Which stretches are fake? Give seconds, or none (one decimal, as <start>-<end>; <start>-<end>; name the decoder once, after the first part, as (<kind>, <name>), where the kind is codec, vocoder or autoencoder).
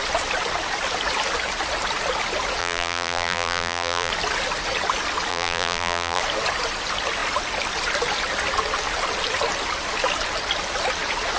2.6-4.1 (vocoder, BigVGAN v2); 5.3-6.2